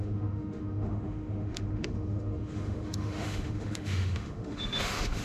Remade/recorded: remade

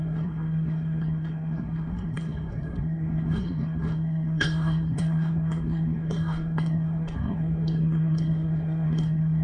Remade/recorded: remade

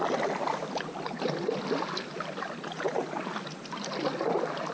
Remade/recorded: recorded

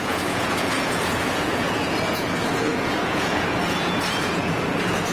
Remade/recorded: remade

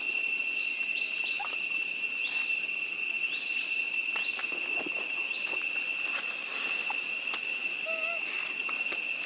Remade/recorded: recorded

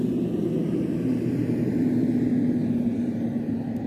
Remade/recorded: remade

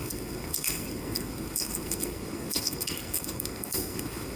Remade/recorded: remade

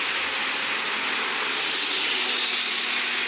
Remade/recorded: recorded